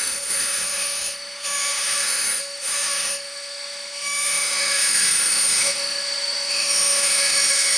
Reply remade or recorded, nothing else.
remade